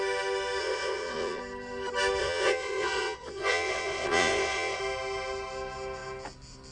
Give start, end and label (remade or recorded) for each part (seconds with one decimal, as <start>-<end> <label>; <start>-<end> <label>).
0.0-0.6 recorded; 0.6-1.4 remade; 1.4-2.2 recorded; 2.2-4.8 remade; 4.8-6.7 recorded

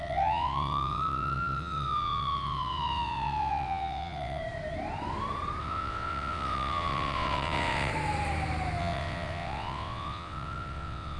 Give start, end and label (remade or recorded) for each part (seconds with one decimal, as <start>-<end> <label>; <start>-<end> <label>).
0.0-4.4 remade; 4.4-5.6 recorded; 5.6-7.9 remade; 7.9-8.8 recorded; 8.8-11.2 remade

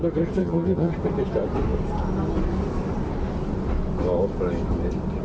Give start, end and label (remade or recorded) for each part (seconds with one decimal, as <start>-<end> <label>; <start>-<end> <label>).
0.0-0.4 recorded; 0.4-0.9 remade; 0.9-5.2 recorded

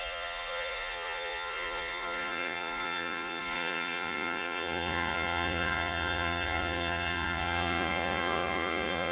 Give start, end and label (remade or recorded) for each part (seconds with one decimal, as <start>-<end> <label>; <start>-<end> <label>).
0.0-9.1 remade

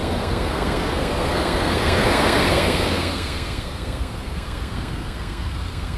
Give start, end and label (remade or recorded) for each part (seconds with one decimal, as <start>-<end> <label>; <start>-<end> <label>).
0.0-6.0 remade